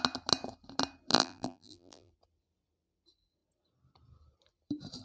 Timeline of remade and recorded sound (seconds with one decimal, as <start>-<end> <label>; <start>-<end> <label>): 0.0-1.1 recorded; 1.1-2.1 remade; 2.1-5.0 recorded